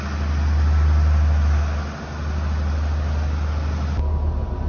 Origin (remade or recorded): recorded